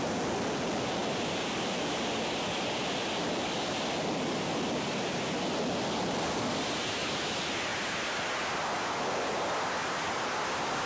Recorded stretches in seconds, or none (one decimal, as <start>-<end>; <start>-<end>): 0.0-1.0; 5.6-10.9